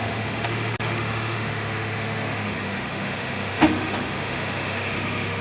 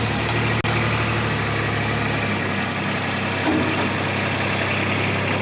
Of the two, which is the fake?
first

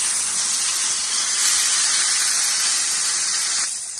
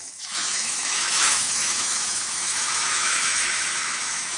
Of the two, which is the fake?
second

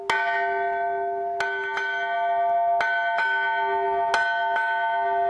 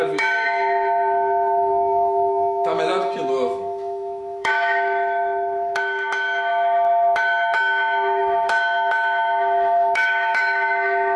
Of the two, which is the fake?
second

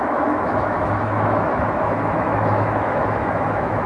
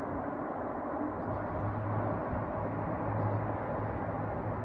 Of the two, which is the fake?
first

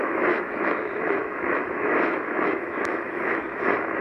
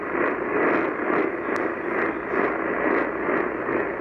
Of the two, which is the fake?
first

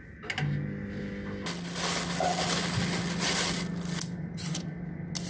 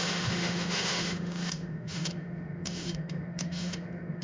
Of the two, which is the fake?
second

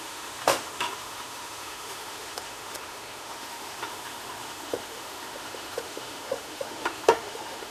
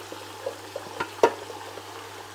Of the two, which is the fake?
first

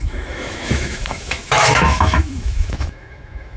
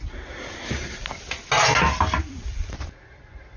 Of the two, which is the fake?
first